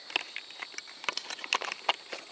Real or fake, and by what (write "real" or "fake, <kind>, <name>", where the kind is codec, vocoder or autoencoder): real